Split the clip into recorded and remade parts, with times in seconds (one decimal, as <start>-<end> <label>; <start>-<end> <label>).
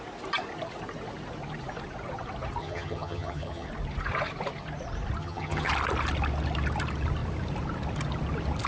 0.0-2.6 recorded; 2.6-3.7 remade; 3.7-5.2 recorded; 5.2-5.7 remade; 5.7-8.7 recorded